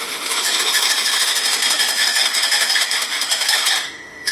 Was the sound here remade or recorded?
remade